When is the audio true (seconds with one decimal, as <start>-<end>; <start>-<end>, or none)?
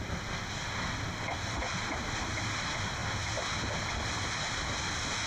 0.0-5.3